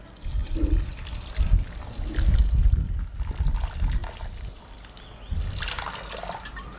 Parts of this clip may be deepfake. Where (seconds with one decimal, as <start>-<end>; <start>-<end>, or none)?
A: none